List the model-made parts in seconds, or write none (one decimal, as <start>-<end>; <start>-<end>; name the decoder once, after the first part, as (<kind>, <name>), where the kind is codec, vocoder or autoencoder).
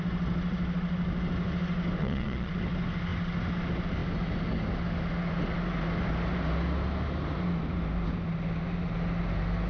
2.0-2.5 (vocoder, Vocos)